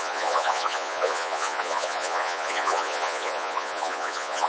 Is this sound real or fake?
fake